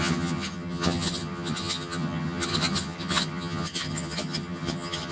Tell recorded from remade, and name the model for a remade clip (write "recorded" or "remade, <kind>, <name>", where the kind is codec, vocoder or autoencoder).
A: remade, vocoder, HiFi-GAN